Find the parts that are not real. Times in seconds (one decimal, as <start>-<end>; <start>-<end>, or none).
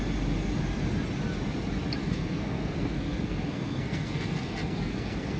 2.0-5.4